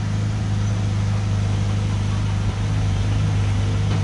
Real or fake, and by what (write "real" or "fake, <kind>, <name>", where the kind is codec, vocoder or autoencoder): real